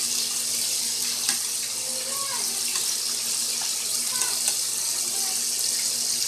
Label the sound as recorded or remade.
recorded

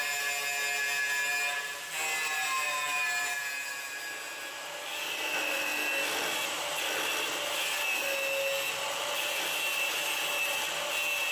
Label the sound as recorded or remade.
recorded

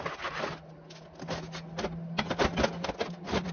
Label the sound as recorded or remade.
recorded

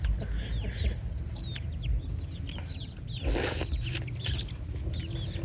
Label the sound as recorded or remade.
recorded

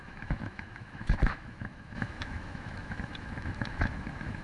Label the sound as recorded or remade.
remade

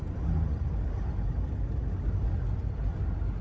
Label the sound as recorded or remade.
recorded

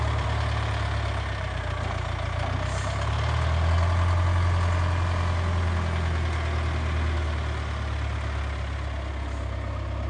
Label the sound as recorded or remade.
recorded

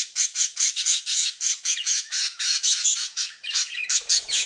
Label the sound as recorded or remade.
remade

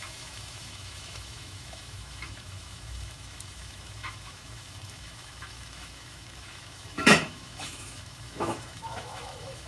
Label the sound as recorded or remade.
remade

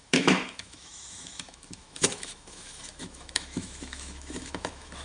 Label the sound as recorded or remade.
remade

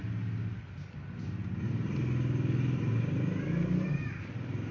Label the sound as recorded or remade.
recorded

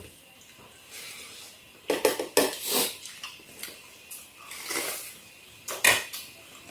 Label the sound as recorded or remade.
recorded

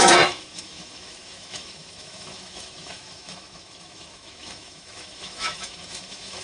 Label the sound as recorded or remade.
remade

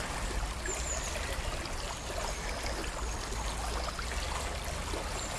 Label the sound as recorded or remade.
recorded